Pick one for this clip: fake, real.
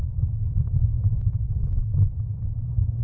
real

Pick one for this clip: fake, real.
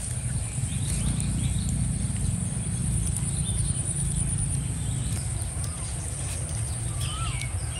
fake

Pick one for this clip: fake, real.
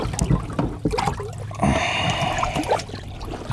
real